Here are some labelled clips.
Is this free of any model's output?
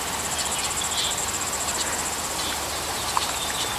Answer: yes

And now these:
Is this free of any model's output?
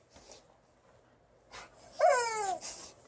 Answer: yes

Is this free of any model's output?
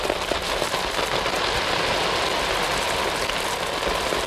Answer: yes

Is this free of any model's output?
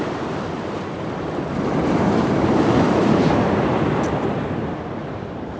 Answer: no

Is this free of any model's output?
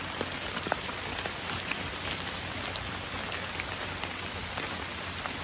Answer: yes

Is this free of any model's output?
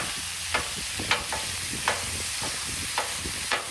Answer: yes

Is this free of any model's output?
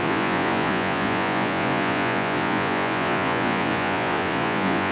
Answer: no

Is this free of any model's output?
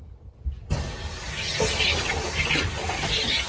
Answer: yes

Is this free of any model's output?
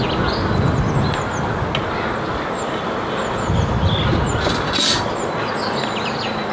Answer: yes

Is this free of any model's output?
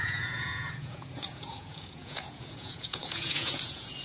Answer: no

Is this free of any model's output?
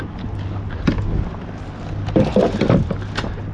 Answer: yes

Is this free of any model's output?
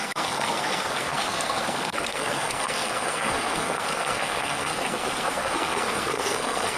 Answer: no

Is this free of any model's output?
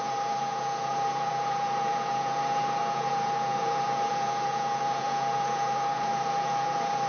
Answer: no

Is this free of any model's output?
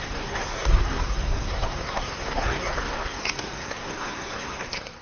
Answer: no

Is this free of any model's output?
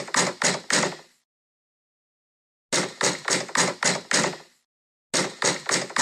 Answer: yes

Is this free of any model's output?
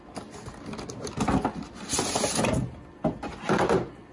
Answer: yes